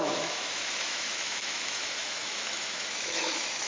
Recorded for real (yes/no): no